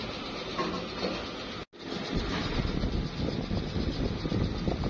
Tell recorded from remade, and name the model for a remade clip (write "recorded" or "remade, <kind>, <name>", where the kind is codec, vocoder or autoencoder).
recorded